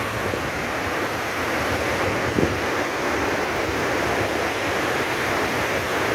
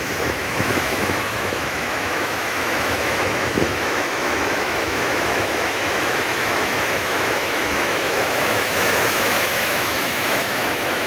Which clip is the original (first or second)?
first